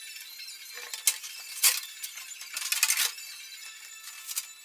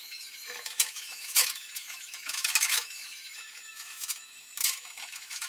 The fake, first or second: second